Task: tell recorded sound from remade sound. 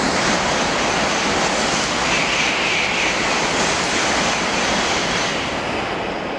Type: recorded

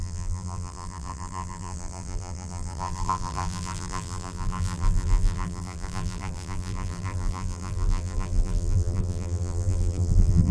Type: remade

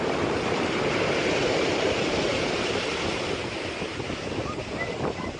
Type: remade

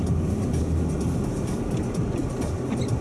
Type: recorded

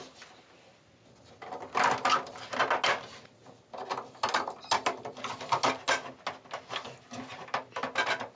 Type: recorded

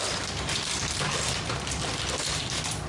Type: remade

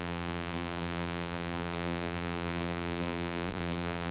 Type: remade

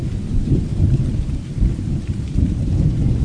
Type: remade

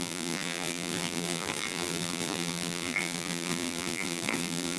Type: remade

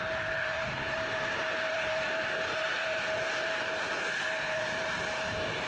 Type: remade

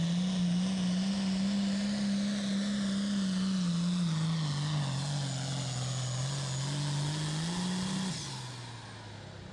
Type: recorded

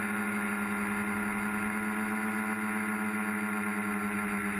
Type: recorded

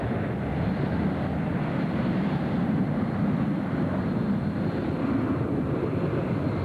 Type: remade